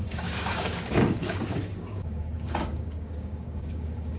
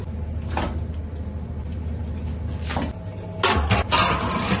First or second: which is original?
second